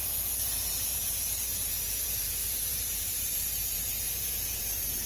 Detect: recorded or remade remade